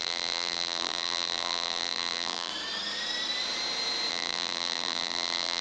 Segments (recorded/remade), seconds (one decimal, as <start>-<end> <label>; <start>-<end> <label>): 0.0-2.5 remade; 2.5-4.1 recorded; 4.1-5.6 remade